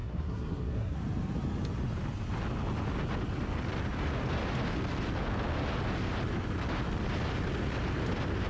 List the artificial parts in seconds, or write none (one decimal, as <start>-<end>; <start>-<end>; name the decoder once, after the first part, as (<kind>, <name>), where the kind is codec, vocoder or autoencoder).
0.0-1.0 (codec, SNAC)

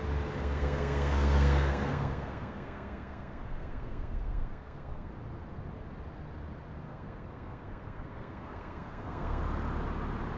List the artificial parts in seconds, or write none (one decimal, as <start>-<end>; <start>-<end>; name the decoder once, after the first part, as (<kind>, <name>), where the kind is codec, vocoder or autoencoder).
0.4-5.1 (codec, SNAC); 6.9-9.4

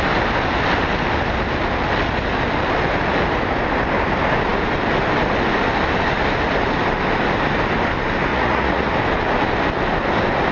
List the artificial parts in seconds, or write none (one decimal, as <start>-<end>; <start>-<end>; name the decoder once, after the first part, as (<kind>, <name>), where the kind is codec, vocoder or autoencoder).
8.3-8.9 (vocoder, Vocos)

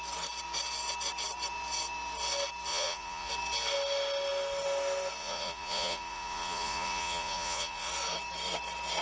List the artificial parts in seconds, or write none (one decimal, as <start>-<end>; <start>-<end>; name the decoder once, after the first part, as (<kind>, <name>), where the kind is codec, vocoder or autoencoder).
2.7-3.3 (vocoder, Vocos); 5.2-7.9

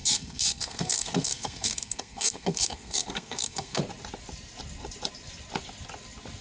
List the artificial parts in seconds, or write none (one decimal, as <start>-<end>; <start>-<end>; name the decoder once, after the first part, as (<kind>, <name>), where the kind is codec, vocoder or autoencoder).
0.0-3.8 (codec, SNAC)

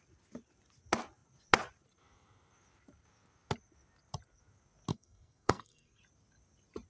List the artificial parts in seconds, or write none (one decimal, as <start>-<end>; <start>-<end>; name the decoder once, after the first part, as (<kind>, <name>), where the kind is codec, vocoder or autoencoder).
4.9-6.0 (codec, SNAC)

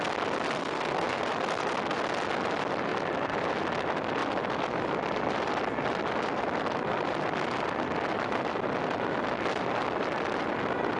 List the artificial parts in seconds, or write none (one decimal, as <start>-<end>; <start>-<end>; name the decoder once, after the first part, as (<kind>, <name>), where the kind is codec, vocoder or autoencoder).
0.6-1.2 (codec, SNAC)